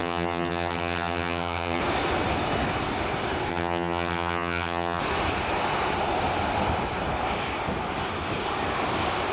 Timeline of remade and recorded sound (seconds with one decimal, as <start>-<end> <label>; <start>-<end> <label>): 0.0-1.8 remade; 1.8-3.5 recorded; 3.5-5.0 remade; 5.0-9.3 recorded